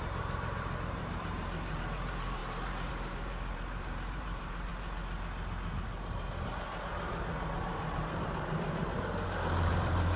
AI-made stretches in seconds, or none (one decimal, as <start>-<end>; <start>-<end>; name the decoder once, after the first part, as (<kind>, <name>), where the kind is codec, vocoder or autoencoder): 0.0-4.7 (vocoder, BigVGAN v2); 7.5-10.2